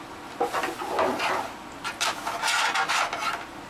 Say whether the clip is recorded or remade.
recorded